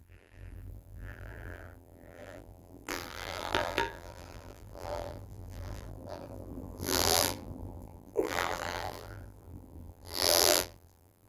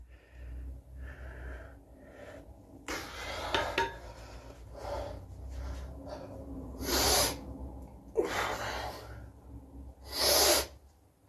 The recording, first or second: second